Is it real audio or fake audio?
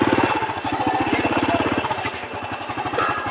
real